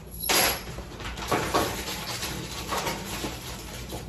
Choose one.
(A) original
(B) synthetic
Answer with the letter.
B